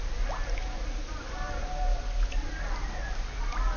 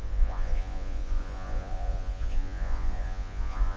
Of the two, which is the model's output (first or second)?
second